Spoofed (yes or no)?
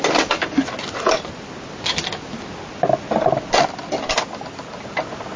no